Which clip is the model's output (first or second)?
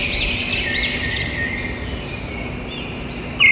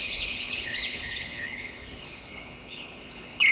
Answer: second